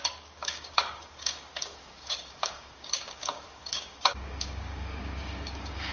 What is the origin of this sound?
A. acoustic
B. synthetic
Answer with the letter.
B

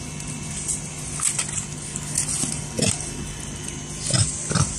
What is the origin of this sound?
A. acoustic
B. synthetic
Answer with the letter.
A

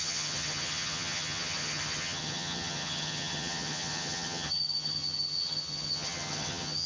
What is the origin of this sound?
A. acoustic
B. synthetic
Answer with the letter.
B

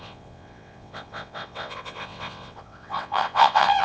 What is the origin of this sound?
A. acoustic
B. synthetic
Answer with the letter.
B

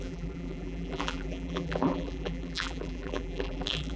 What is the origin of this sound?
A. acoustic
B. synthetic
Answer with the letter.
B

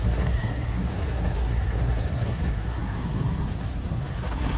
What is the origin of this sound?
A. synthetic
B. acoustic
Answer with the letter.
A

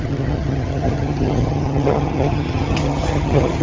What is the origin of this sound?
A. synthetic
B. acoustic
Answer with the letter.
A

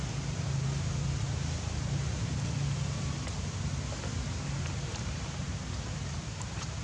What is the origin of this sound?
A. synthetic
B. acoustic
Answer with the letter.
B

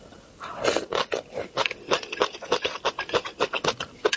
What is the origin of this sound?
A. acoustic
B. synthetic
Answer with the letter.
A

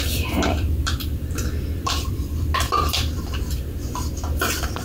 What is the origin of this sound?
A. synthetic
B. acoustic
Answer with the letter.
A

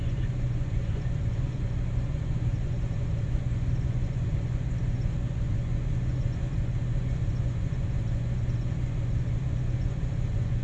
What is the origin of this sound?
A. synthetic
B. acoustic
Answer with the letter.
A